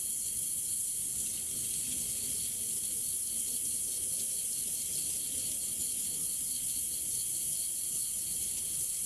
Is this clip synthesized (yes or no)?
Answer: no